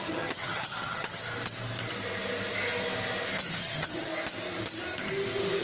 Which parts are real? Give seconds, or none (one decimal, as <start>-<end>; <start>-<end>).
1.3-3.6; 4.1-5.6